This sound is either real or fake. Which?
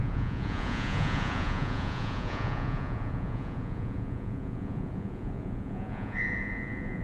fake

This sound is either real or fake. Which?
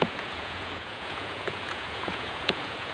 fake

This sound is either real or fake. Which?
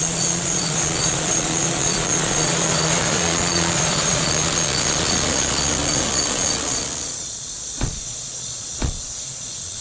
fake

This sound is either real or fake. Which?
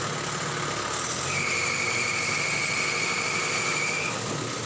real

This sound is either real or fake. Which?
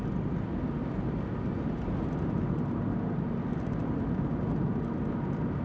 real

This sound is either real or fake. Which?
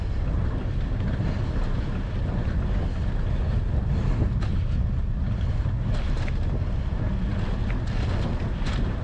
real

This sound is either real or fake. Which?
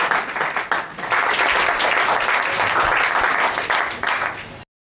real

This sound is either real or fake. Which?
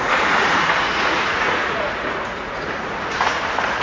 fake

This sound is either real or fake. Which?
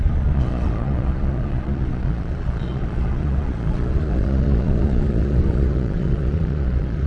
fake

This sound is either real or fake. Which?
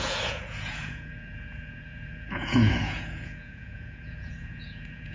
fake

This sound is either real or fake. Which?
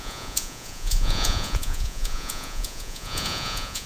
fake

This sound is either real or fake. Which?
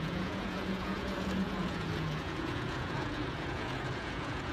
fake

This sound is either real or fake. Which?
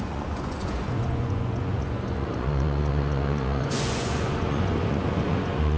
fake